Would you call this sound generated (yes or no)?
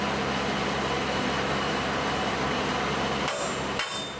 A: no